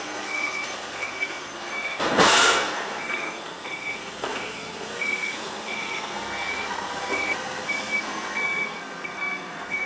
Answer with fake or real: fake